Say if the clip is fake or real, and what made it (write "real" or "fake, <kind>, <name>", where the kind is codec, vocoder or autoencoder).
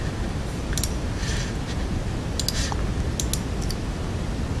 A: real